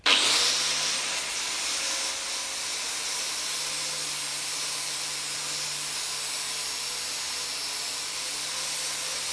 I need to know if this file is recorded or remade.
recorded